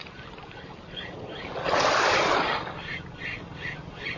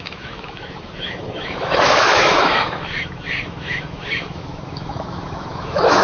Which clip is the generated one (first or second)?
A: second